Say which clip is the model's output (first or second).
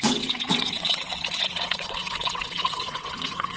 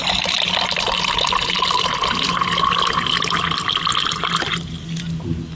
first